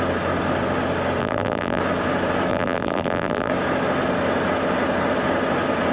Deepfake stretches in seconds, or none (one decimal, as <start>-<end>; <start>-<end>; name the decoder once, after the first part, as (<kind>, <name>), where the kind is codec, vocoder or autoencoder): 1.2-1.8 (vocoder, BigVGAN v2); 2.5-3.5